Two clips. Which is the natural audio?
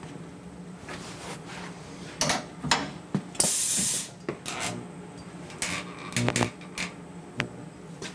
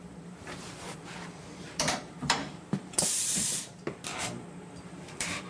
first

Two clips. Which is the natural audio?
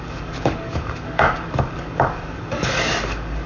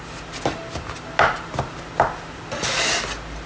second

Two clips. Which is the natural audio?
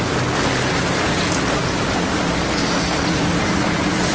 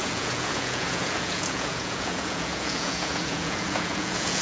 first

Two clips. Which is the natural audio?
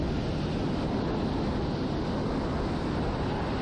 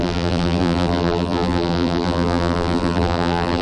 first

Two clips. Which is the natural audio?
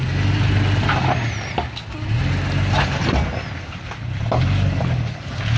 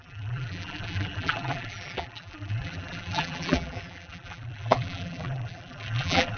first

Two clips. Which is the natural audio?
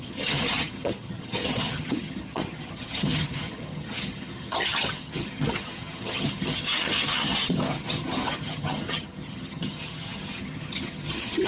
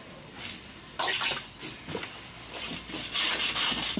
second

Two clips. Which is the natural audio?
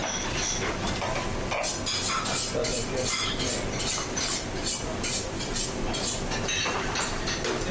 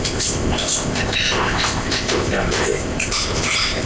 first